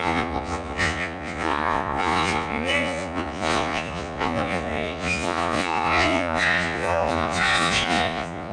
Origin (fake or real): fake